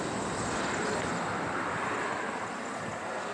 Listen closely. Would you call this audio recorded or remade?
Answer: recorded